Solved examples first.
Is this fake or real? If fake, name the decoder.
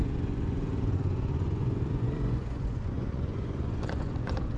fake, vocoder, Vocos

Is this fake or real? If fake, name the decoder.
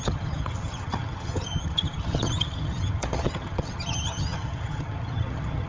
fake, vocoder, HiFi-GAN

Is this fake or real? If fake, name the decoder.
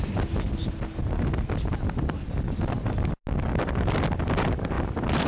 real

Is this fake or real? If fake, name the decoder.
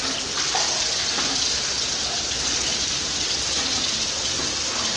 real